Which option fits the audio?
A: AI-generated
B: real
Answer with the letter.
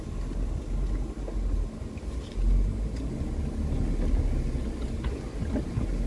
B